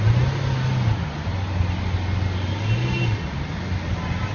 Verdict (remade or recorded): recorded